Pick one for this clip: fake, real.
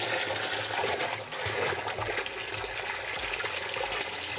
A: real